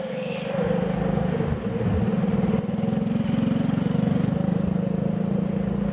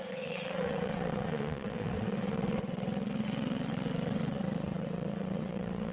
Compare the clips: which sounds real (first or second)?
first